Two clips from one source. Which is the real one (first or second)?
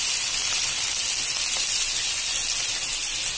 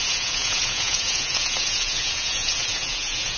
first